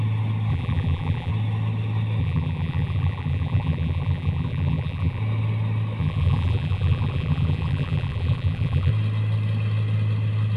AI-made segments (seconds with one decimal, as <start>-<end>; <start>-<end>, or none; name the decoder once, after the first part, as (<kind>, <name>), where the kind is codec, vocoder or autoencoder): 0.5-1.3 (vocoder, BigVGAN v2); 2.2-5.2; 6.0-8.9